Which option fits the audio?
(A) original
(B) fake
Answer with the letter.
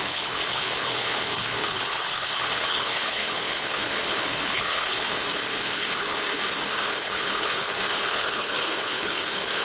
B